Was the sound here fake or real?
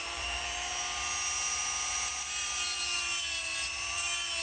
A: fake